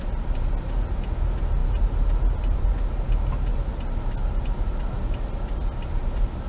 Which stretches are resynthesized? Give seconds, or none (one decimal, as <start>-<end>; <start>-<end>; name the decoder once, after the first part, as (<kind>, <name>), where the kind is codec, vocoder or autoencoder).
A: none